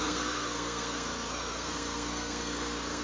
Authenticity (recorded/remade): remade